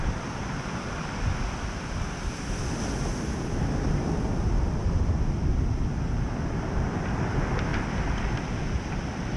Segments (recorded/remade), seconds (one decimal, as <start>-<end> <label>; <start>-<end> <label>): 0.0-7.7 recorded; 7.7-8.3 remade; 8.3-9.4 recorded